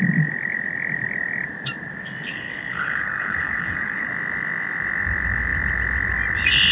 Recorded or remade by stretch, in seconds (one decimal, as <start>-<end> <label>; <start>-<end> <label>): 0.0-2.3 recorded; 2.3-4.1 remade; 4.1-6.7 recorded